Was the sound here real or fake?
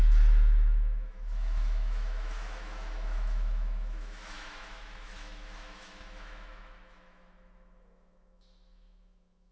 fake